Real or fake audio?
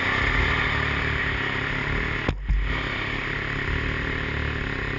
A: real